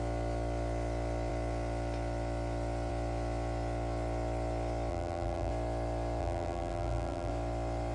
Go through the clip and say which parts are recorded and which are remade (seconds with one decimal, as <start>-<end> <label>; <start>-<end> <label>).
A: 0.0-4.9 recorded; 4.9-5.5 remade; 5.5-6.2 recorded; 6.2-7.3 remade; 7.3-7.9 recorded